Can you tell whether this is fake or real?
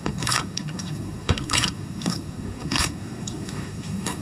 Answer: fake